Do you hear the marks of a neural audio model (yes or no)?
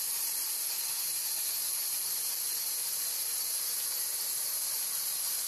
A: yes